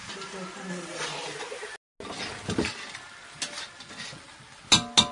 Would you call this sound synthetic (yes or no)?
no